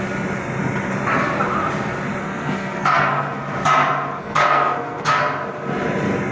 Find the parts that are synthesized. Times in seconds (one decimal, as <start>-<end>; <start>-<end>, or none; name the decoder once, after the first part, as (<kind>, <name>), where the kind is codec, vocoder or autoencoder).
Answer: 2.2-3.4 (codec, SNAC); 4.2-5.2